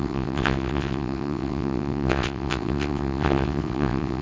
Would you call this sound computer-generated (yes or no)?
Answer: yes